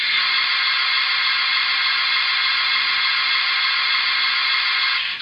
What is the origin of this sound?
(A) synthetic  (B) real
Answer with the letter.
B